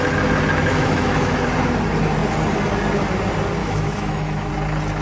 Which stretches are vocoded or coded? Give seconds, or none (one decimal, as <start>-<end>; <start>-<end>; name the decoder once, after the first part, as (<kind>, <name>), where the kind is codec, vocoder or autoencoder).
0.7-1.3 (autoencoder, DAC-VAE); 3.6-4.5